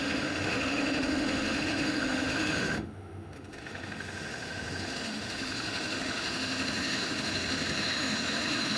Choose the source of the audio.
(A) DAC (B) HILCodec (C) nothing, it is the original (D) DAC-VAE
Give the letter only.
D